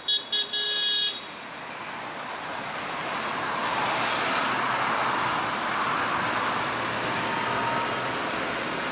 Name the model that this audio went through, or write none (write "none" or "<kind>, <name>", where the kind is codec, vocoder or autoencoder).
none